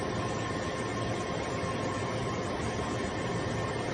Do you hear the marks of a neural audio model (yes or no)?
no